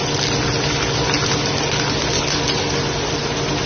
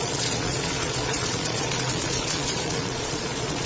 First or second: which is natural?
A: first